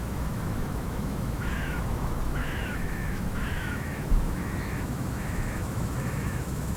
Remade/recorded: remade